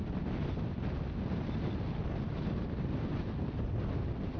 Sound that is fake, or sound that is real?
real